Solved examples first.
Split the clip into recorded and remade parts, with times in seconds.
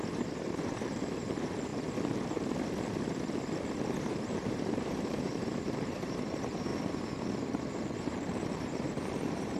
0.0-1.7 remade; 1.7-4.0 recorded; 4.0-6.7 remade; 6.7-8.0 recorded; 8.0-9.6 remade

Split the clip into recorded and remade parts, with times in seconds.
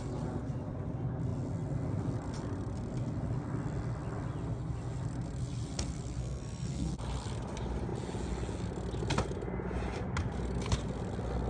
0.0-6.2 recorded; 6.2-6.9 remade; 6.9-11.5 recorded